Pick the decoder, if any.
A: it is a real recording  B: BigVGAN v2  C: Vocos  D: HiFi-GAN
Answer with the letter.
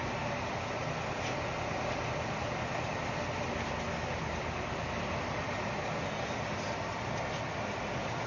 A